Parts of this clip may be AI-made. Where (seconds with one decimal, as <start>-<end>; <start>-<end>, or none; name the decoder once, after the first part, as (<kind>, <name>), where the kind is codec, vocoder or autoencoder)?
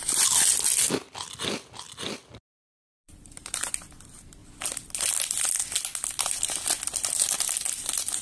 2.5-3.7 (vocoder, BigVGAN v2)